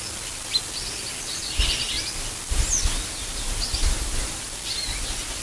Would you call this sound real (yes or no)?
yes